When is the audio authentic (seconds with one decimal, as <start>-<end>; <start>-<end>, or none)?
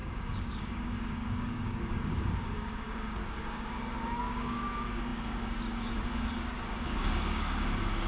none